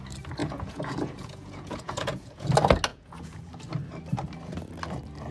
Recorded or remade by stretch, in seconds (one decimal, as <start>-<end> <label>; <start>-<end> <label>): 0.0-0.4 recorded; 0.4-2.5 remade; 2.5-2.9 recorded; 2.9-3.5 remade; 3.5-5.3 recorded